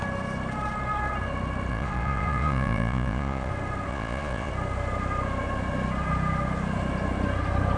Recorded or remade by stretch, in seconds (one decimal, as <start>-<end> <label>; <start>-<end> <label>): 0.0-1.7 recorded; 1.7-3.5 remade; 3.5-3.9 recorded; 3.9-4.5 remade; 4.5-7.8 recorded